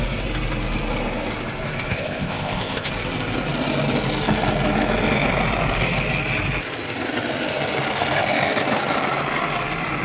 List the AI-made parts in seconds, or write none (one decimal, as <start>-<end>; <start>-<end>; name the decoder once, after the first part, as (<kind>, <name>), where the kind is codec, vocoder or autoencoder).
1.9-2.9 (codec, ZipCodec)